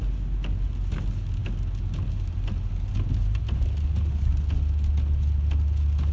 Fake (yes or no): no